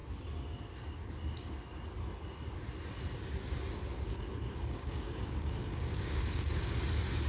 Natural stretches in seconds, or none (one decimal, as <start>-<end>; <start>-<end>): 0.0-3.9; 6.8-7.3